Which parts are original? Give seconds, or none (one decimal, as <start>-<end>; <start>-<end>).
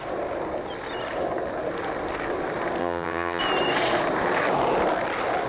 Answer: 0.0-2.8; 3.4-5.5